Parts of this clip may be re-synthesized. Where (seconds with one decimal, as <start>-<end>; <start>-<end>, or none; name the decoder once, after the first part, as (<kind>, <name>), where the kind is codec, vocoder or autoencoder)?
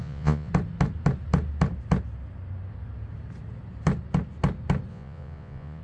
0.0-0.5 (vocoder, Vocos); 4.9-5.8